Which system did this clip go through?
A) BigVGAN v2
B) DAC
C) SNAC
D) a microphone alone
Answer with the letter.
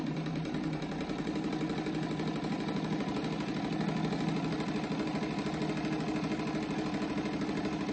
D